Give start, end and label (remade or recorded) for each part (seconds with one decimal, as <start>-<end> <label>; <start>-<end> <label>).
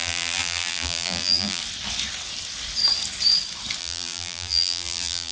0.0-1.6 remade; 1.6-3.8 recorded; 3.8-5.3 remade